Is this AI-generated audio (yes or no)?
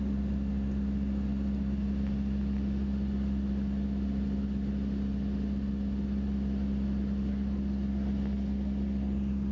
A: no